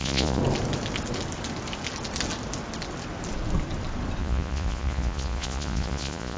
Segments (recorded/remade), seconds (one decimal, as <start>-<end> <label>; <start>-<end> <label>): 0.0-0.4 remade; 0.4-4.2 recorded; 4.2-6.4 remade